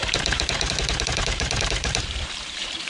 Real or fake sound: fake